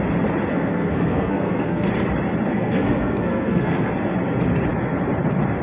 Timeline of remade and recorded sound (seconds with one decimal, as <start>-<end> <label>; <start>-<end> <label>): 0.0-0.5 recorded; 0.5-1.9 remade; 1.9-2.5 recorded; 2.5-3.9 remade; 3.9-5.6 recorded